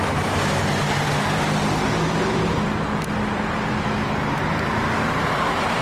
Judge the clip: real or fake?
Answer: real